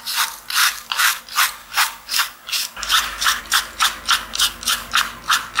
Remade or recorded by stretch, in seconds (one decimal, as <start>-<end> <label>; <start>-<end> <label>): 0.0-0.6 recorded; 0.6-1.2 remade; 1.2-1.6 recorded; 1.6-3.4 remade; 3.4-4.3 recorded; 4.3-4.9 remade; 4.9-5.6 recorded